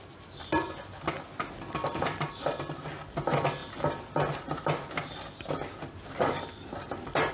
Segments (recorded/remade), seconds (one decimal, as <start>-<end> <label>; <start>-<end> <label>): 0.0-7.3 recorded